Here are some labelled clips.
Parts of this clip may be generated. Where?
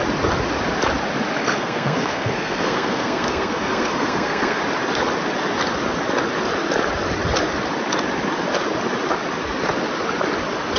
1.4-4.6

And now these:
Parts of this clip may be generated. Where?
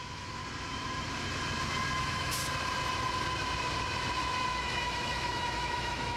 0.0-0.4; 2.0-2.4; 4.6-6.2